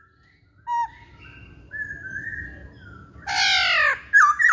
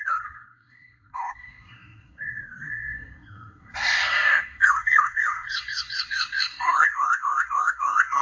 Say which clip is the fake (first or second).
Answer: second